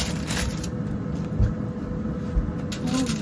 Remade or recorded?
recorded